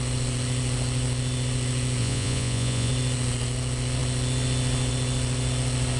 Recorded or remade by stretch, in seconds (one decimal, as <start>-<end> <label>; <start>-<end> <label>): 0.0-2.0 recorded; 2.0-2.9 remade; 2.9-6.0 recorded